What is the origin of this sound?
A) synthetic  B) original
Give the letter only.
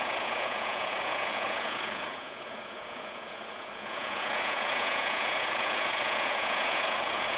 A